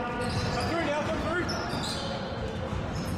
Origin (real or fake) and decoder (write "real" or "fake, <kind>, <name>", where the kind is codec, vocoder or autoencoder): real